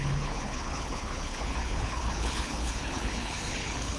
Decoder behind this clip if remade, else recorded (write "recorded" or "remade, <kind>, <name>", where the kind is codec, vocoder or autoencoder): remade, codec, HILCodec